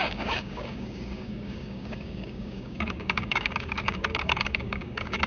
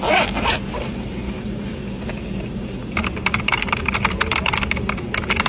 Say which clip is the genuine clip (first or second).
second